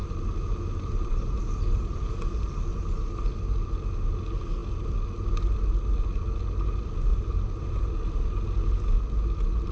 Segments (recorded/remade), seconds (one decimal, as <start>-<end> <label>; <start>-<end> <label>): 0.0-2.4 remade; 2.4-7.1 recorded; 7.1-7.9 remade; 7.9-9.7 recorded